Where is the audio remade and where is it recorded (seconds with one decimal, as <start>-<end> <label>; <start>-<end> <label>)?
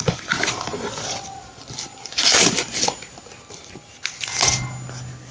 0.0-0.7 recorded; 0.7-3.9 remade; 3.9-5.3 recorded